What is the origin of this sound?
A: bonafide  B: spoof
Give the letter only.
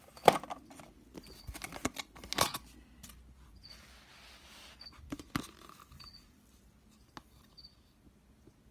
A